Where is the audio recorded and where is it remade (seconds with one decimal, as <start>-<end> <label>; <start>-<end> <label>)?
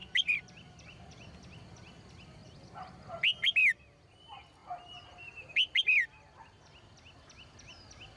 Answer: 0.0-8.2 recorded